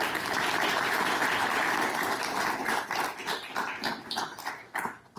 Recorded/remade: recorded